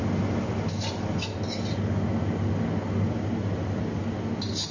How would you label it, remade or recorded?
recorded